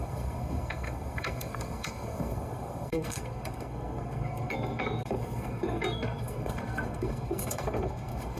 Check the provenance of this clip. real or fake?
fake